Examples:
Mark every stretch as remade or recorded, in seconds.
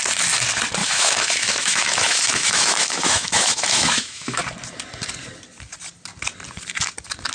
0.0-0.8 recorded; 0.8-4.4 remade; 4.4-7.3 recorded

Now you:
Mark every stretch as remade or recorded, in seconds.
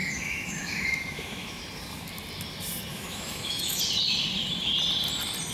0.0-1.6 remade; 1.6-2.9 recorded; 2.9-3.8 remade; 3.8-5.5 recorded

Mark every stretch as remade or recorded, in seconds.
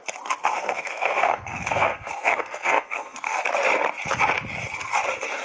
0.0-0.4 recorded; 0.4-3.4 remade; 3.4-5.4 recorded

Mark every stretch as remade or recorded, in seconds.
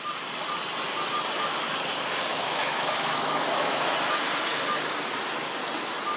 0.0-2.3 recorded; 2.3-3.9 remade; 3.9-6.2 recorded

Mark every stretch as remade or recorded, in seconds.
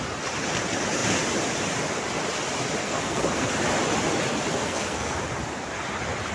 0.0-2.8 recorded; 2.8-3.5 remade; 3.5-4.5 recorded; 4.5-5.2 remade; 5.2-6.3 recorded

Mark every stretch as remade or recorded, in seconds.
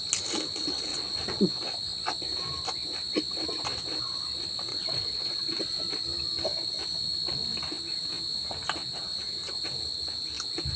0.0-0.9 recorded; 0.9-1.4 remade; 1.4-4.7 recorded; 4.7-5.8 remade; 5.8-10.8 recorded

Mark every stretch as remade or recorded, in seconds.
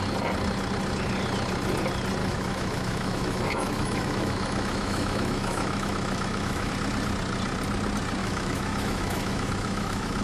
0.0-2.2 recorded; 2.2-6.7 remade; 6.7-8.2 recorded; 8.2-10.2 remade